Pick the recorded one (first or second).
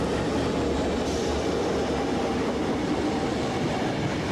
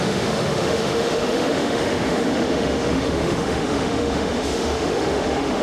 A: first